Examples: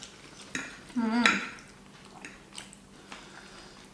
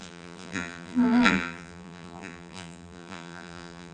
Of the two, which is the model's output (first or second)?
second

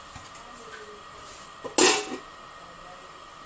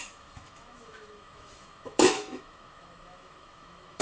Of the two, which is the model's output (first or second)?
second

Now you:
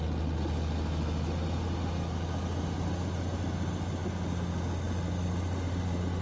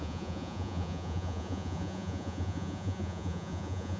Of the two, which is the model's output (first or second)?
second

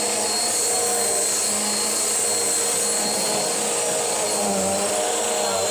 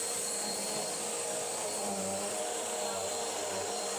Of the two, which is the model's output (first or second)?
second